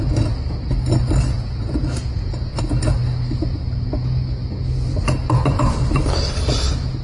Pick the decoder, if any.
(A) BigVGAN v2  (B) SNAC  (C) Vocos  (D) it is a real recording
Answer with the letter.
D